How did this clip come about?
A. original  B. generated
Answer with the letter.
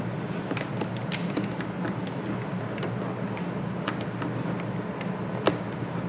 A